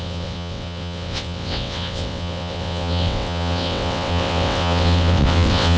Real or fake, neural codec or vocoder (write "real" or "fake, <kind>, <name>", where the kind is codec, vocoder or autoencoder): fake, vocoder, WaveNeXt